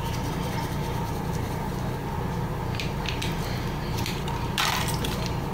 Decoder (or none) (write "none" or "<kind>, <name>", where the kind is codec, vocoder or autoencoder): vocoder, BigVGAN v2